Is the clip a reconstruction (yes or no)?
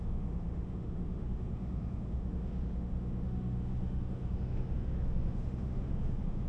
yes